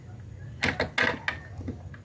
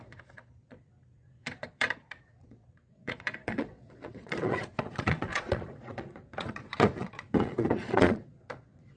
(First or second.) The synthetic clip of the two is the second